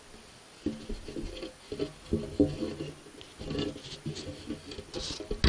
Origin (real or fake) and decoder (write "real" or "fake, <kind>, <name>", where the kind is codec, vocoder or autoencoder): real